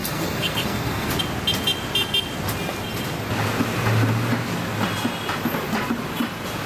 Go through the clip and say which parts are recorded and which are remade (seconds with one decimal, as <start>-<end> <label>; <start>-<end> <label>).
0.0-1.1 remade; 1.1-6.7 recorded